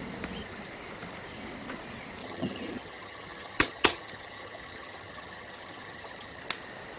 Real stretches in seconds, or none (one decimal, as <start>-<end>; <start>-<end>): 0.0-2.2; 6.4-7.0